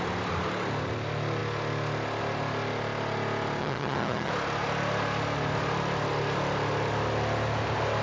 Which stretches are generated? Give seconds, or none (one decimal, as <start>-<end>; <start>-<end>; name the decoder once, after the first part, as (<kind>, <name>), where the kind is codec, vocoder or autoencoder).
3.6-4.3 (vocoder, HiFi-GAN)